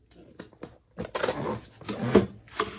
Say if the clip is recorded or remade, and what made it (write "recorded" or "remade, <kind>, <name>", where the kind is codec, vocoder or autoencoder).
recorded